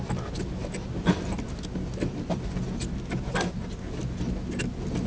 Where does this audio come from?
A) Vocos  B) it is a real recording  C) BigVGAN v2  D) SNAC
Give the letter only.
B